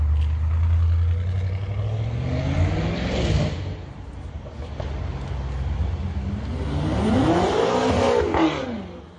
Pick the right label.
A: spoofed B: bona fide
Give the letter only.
B